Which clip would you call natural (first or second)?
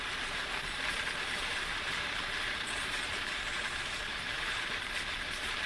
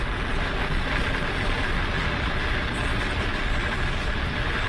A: second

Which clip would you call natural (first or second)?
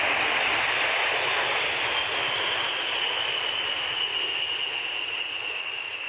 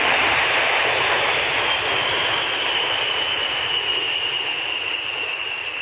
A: first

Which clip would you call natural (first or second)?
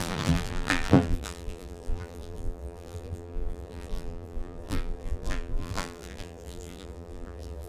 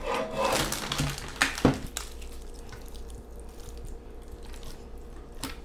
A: second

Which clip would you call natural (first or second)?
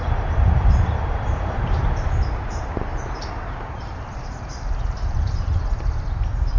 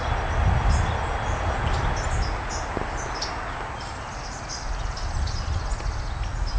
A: second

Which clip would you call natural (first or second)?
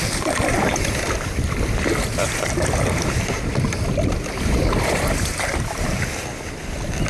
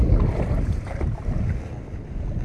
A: second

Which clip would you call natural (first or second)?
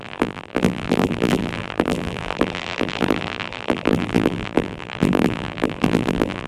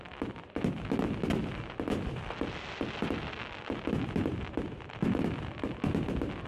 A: second